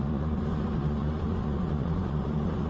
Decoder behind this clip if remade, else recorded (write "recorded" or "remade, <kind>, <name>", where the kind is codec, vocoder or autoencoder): remade, vocoder, Vocos